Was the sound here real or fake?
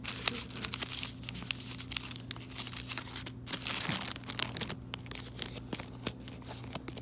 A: real